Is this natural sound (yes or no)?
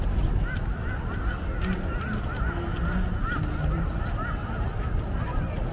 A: yes